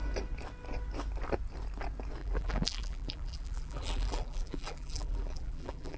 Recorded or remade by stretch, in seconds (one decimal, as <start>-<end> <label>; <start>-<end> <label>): 0.0-2.2 recorded; 2.2-6.0 remade